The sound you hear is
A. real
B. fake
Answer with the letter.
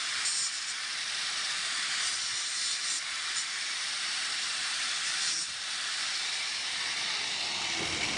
B